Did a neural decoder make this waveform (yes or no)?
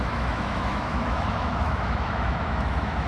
yes